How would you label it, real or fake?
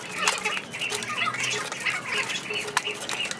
real